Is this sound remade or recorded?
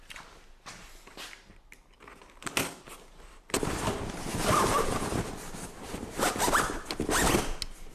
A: recorded